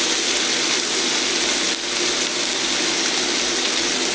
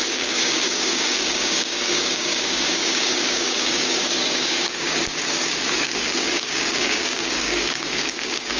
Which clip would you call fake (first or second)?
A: second